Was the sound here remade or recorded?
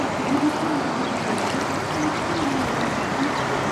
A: recorded